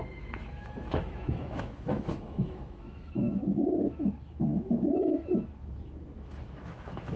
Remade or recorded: remade